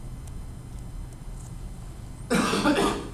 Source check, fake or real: real